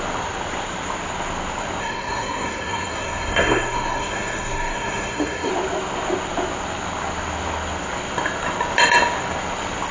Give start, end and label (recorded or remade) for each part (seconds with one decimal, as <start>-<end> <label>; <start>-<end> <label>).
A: 0.0-1.8 recorded; 1.8-5.5 remade; 5.5-9.9 recorded